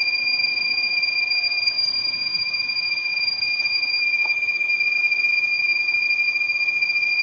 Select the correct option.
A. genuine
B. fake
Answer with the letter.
B